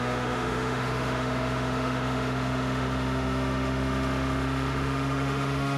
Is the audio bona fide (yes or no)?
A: no